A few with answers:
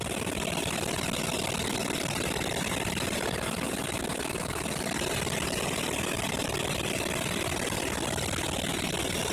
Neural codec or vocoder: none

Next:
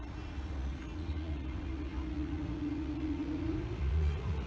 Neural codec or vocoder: vocoder, Vocos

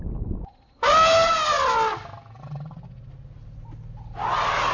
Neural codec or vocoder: none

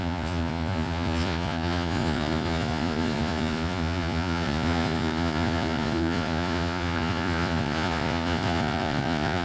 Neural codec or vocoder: vocoder, Vocos